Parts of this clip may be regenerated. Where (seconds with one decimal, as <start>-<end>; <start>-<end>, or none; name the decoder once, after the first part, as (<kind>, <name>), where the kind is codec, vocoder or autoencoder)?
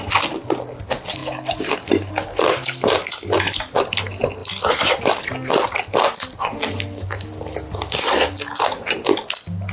none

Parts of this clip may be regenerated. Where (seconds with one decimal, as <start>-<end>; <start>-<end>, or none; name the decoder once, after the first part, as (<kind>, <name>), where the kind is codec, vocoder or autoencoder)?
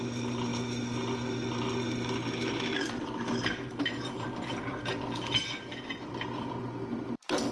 0.0-0.5 (vocoder, BigVGAN v2); 4.1-7.5